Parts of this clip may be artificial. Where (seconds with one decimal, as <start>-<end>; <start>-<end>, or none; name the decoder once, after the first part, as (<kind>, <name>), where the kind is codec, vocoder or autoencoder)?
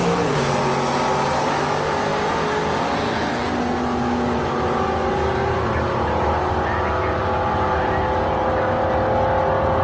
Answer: none